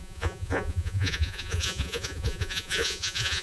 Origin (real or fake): fake